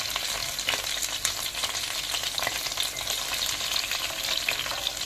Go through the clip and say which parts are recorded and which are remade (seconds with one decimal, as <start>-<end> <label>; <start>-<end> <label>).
0.0-5.1 recorded